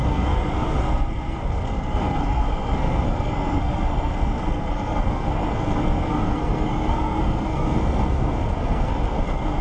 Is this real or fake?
fake